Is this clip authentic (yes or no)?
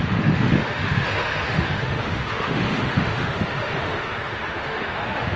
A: no